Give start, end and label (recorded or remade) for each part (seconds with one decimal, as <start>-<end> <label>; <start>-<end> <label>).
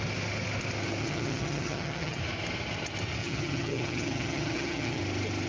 0.0-1.0 recorded; 1.0-2.2 remade; 2.2-3.2 recorded; 3.2-5.0 remade; 5.0-5.5 recorded